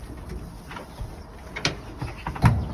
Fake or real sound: real